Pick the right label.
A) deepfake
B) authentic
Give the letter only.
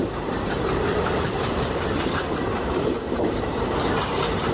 A